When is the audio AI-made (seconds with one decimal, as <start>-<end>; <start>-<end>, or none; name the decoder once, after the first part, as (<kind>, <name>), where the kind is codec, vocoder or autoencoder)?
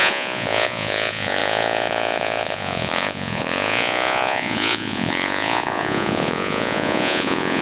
0.0-7.6 (vocoder, Vocos)